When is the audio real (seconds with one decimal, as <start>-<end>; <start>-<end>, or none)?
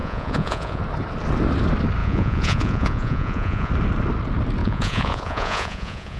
0.8-2.0; 3.7-4.6